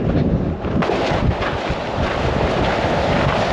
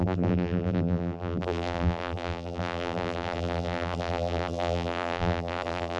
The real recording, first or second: first